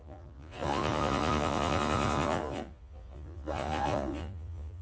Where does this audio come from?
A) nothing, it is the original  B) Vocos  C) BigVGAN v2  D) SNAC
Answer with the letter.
B